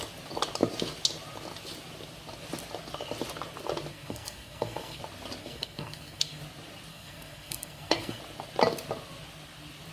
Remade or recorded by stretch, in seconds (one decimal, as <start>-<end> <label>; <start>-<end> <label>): 0.0-3.9 recorded; 3.9-5.0 remade; 5.0-5.4 recorded; 5.4-6.4 remade; 6.4-6.9 recorded; 6.9-8.2 remade; 8.2-9.9 recorded